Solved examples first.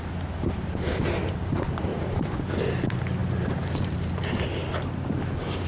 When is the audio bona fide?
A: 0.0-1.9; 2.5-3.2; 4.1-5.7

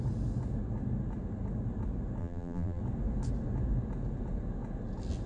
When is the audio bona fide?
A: 0.0-2.2; 2.8-5.3

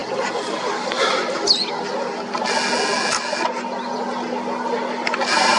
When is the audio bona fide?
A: 0.0-5.6

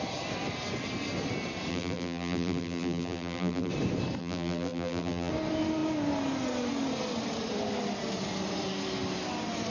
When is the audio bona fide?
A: 0.0-1.7; 3.7-4.2; 5.3-9.7

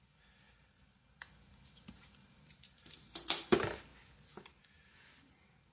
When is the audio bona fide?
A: 3.9-4.5

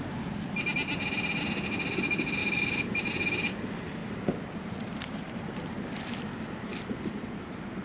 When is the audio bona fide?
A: 0.0-2.4; 3.1-4.0; 6.2-7.8